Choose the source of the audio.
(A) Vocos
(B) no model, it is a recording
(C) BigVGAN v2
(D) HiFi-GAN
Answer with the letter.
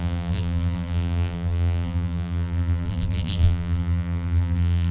C